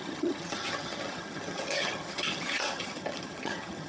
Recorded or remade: remade